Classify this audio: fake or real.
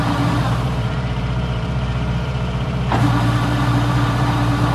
fake